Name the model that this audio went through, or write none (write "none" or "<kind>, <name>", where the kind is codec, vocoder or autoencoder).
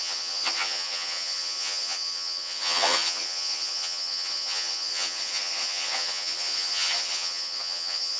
vocoder, HiFi-GAN